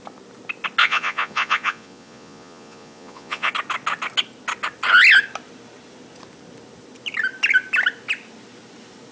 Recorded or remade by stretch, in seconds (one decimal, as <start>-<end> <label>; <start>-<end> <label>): 0.0-0.8 recorded; 0.8-3.5 remade; 3.5-9.1 recorded